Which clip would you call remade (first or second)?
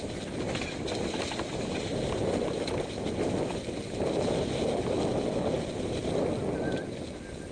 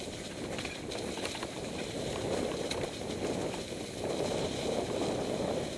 second